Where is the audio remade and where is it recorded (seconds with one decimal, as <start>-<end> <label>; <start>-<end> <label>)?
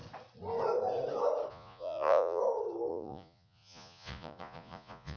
0.0-1.5 recorded; 1.5-2.4 remade; 2.4-2.9 recorded; 2.9-5.2 remade